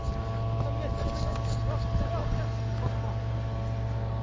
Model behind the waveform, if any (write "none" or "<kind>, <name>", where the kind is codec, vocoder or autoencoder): none